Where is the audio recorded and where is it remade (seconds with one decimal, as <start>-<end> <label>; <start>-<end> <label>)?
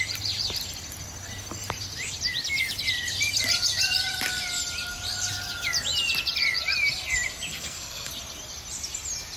0.0-7.5 recorded; 7.5-8.1 remade; 8.1-9.4 recorded